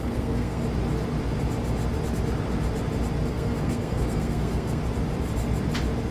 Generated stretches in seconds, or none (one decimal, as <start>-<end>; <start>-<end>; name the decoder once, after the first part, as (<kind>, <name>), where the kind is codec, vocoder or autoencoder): 0.0-0.6 (codec, SNAC); 3.3-4.8